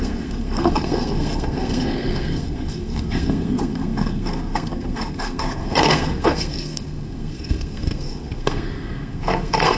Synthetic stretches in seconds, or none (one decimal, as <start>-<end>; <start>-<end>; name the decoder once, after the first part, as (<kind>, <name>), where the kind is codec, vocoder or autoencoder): 0.0-9.8 (codec, SNAC)